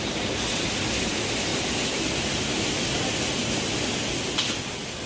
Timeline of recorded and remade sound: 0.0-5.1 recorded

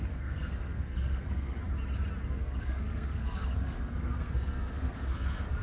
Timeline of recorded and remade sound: 0.0-1.6 remade; 1.6-2.3 recorded; 2.3-5.6 remade

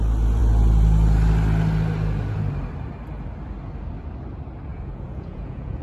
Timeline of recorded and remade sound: 0.0-4.7 recorded; 4.7-5.8 remade